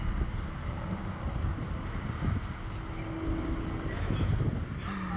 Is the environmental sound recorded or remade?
recorded